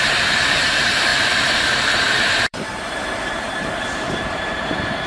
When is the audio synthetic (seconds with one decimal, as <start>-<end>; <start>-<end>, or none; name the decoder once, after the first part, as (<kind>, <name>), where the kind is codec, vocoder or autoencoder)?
0.0-5.1 (vocoder, BigVGAN v2)